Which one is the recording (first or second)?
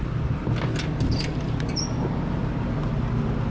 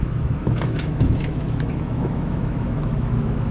first